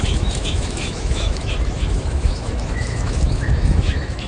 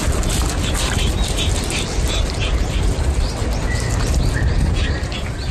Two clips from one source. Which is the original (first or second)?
second